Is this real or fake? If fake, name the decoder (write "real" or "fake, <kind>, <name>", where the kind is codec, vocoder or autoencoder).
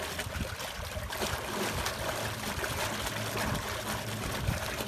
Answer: real